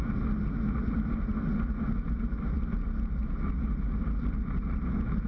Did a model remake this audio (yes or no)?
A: no